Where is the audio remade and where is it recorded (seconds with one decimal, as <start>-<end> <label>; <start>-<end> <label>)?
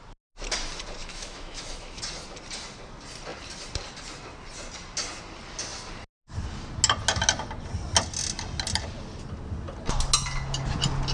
0.0-1.0 recorded; 1.0-2.0 remade; 2.0-11.1 recorded